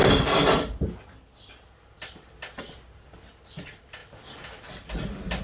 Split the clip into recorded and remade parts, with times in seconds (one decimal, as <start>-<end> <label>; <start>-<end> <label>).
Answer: 0.0-5.4 recorded